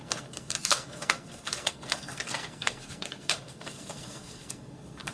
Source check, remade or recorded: remade